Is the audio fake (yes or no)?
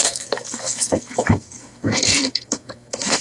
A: yes